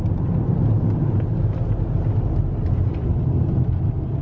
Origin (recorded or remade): recorded